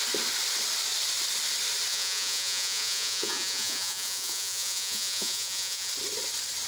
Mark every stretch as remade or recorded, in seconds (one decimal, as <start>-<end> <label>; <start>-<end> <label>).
0.0-1.9 recorded; 1.9-5.9 remade; 5.9-6.7 recorded